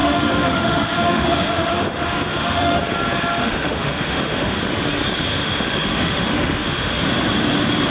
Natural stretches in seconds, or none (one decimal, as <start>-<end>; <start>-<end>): 2.8-3.4; 4.6-5.3; 7.0-7.9